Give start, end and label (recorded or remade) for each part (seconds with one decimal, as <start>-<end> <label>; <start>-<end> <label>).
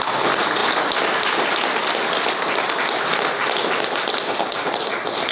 0.0-5.3 recorded